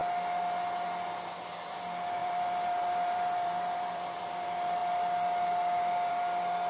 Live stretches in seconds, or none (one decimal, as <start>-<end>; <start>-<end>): 0.0-2.2; 4.2-6.7